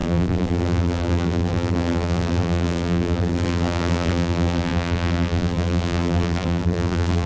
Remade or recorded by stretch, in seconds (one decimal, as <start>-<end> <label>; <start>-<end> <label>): 0.0-7.3 remade